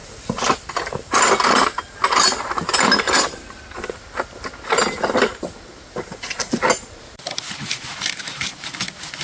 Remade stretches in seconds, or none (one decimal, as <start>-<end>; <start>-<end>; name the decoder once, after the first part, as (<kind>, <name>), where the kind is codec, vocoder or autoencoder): none

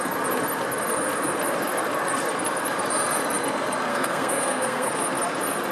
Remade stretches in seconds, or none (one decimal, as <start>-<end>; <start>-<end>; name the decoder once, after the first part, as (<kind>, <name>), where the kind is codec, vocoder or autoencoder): 3.9-4.9 (codec, SNAC)